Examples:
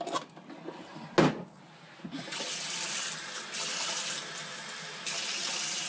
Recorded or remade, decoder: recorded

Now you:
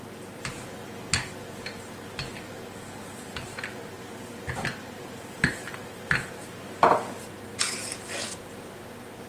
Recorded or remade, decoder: recorded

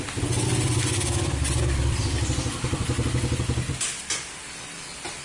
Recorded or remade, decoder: recorded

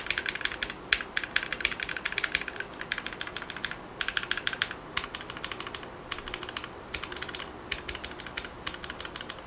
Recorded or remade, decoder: recorded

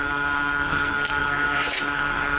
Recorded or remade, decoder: remade, codec, SNAC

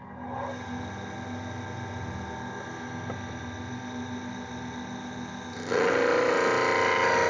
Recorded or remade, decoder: recorded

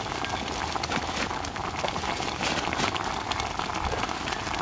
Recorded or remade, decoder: recorded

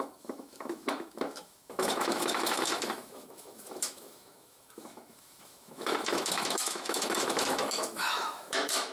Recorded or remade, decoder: remade, autoencoder, DAC-VAE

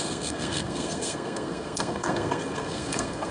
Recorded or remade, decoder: remade, codec, SNAC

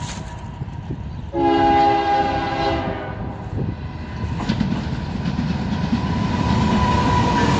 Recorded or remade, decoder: recorded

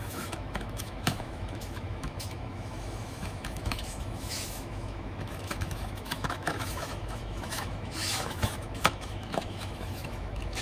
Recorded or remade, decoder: remade, autoencoder, DAC-VAE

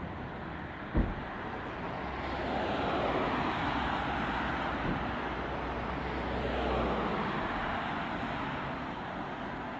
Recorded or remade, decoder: recorded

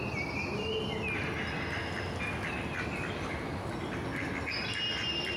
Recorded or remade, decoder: recorded